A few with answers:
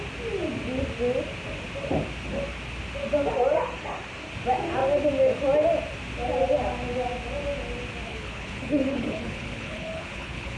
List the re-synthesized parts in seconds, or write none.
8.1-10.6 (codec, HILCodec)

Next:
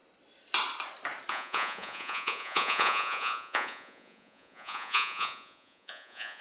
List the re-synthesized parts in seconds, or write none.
1.3-6.4 (vocoder, Vocos)

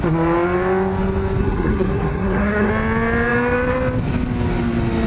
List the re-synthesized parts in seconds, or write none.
1.4-2.7 (codec, SNAC)

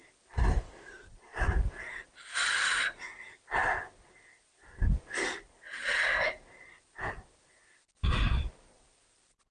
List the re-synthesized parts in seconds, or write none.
0.0-3.6 (vocoder, BigVGAN v2); 7.3-9.5